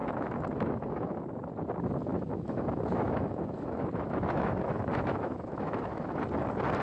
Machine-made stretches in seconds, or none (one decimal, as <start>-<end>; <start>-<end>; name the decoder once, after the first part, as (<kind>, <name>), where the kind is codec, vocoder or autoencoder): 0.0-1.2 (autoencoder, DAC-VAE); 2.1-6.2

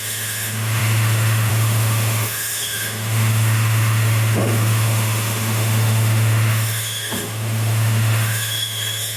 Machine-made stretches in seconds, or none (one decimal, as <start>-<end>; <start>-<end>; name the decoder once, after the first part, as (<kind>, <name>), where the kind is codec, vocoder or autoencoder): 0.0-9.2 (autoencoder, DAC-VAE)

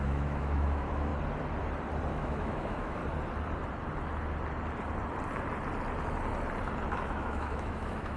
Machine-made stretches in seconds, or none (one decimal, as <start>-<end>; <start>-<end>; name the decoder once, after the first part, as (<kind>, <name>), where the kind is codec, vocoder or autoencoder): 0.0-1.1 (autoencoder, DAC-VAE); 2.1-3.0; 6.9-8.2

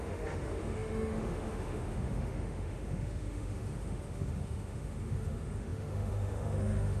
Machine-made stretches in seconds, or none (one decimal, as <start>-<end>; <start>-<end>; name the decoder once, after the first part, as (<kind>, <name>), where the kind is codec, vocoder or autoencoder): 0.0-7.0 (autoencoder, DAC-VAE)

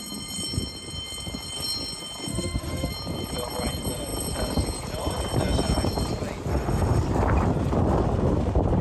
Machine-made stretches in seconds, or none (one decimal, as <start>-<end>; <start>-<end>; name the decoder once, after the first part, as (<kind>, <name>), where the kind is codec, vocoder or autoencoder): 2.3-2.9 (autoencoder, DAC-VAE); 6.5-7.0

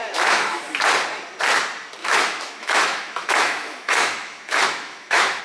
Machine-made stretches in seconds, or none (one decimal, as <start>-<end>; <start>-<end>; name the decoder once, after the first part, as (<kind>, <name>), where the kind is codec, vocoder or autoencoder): 0.0-0.6 (autoencoder, DAC-VAE); 2.0-5.4